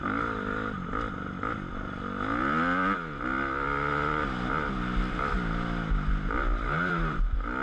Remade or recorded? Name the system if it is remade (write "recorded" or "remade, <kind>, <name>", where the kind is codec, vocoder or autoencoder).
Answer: recorded